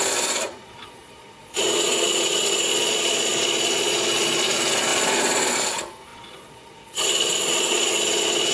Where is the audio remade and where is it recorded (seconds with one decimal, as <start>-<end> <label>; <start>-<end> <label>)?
0.0-8.5 remade